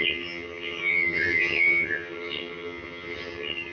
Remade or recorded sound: remade